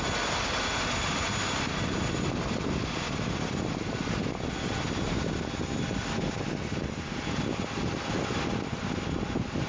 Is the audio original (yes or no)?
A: yes